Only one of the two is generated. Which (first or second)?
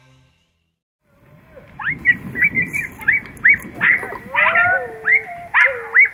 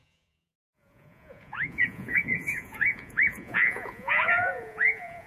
second